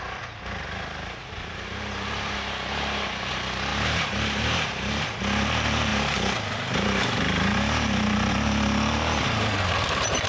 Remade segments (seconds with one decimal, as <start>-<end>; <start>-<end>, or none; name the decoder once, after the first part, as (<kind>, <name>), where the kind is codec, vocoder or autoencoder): 1.2-3.3 (vocoder, BigVGAN v2); 3.7-5.0